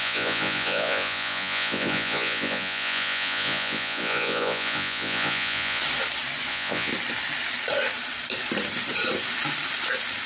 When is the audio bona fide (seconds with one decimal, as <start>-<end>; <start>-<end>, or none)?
5.8-6.5; 6.9-10.3